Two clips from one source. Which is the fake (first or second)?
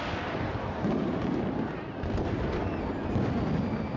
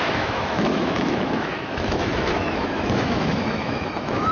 second